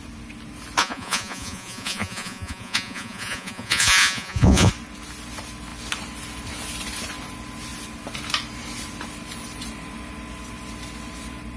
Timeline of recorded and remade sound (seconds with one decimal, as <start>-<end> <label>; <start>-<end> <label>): 0.0-0.8 recorded; 0.8-4.7 remade; 4.7-11.6 recorded